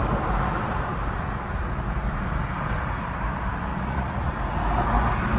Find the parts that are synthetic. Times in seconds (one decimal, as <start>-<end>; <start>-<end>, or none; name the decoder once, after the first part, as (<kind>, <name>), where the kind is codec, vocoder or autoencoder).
3.7-4.3 (vocoder, Vocos)